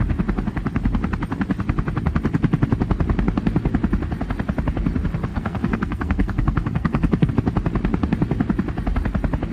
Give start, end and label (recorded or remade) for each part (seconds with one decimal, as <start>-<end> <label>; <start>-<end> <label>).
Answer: 0.0-5.3 recorded; 5.3-7.3 remade; 7.3-9.5 recorded